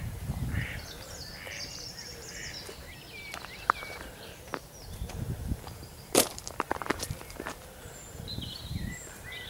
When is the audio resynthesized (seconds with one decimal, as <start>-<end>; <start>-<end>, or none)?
0.0-1.3; 1.9-2.4; 3.6-9.5